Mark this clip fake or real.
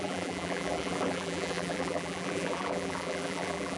fake